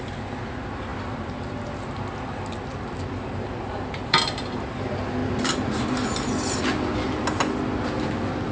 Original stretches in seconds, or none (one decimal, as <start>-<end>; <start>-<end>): 0.0-8.5